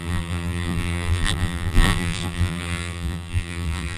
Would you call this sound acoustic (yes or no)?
no